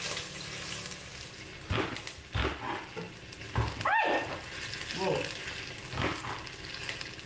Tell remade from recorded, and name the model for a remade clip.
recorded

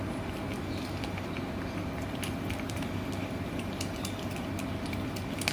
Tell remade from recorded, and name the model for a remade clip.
recorded